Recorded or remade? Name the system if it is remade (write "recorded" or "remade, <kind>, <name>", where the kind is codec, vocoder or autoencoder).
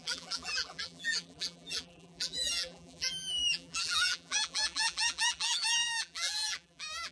remade, vocoder, BigVGAN v2